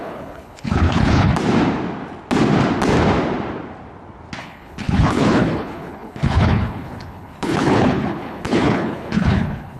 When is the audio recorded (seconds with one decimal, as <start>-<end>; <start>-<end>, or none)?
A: 1.3-4.4